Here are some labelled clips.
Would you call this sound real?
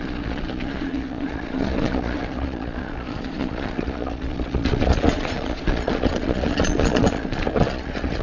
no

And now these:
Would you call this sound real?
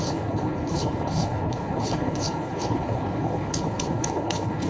no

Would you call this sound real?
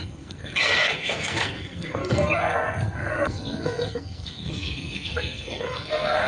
no